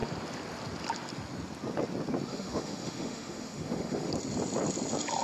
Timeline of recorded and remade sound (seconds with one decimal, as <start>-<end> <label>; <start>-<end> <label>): 0.0-2.3 recorded; 2.3-4.1 remade; 4.1-5.2 recorded